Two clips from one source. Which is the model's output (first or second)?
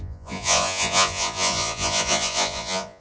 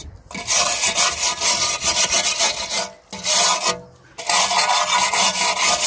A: first